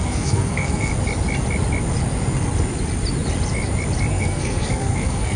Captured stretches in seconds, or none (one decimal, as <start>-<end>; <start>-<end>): 0.9-4.1